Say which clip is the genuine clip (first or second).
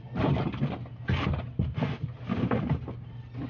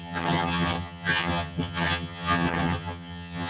first